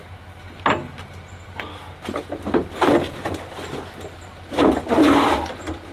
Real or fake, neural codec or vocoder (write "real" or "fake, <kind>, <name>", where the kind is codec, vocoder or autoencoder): real